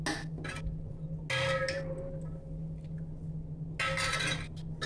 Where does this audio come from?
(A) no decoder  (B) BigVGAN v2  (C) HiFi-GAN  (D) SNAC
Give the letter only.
A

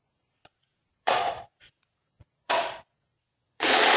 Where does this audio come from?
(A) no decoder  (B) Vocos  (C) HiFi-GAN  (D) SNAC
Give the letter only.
B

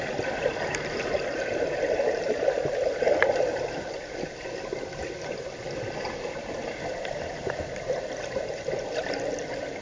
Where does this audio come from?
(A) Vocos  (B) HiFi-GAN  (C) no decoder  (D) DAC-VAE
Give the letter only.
C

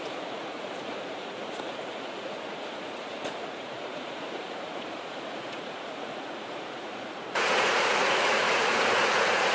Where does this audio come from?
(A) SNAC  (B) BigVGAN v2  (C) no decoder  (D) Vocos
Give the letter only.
D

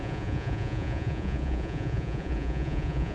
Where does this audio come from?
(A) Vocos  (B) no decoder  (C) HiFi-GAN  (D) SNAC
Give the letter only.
A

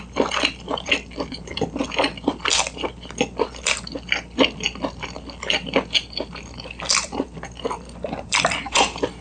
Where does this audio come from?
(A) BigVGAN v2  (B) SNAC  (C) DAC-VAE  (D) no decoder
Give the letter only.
A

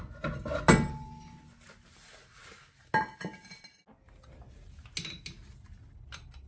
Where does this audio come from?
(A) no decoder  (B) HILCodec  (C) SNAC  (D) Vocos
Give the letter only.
A